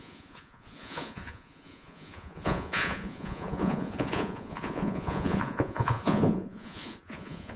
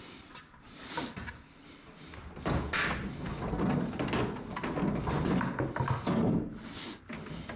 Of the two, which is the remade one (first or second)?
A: first